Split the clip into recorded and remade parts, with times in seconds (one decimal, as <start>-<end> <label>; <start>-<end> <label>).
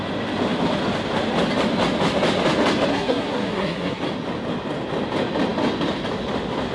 0.0-2.9 recorded; 2.9-4.0 remade; 4.0-6.7 recorded